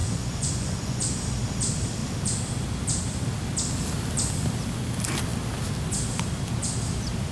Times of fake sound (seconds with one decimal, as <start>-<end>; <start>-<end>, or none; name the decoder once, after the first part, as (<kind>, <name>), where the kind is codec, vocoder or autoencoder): 0.0-1.0 (vocoder, Vocos)

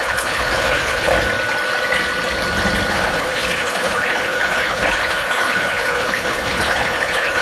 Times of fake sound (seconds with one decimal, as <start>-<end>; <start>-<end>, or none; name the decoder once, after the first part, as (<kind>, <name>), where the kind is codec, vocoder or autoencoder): 0.0-1.1 (codec, HILCodec); 2.9-7.4

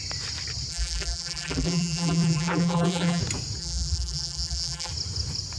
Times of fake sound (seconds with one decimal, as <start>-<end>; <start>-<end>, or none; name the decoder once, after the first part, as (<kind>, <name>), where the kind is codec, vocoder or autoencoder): 0.7-3.2 (vocoder, BigVGAN v2); 3.6-4.9